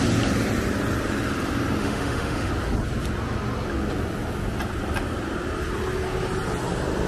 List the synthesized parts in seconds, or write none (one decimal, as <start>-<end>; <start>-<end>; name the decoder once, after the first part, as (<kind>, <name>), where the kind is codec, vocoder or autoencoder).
1.8-2.5 (autoencoder, DAC-VAE)